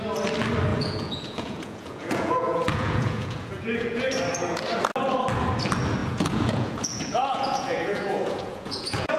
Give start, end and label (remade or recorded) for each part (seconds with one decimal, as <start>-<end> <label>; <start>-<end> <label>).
0.0-0.7 recorded; 0.7-4.1 remade; 4.1-6.0 recorded; 6.0-9.2 remade